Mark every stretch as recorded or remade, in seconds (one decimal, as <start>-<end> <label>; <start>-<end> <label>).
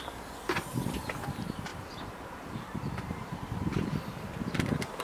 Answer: 0.0-1.7 recorded; 1.7-2.8 remade; 2.8-5.0 recorded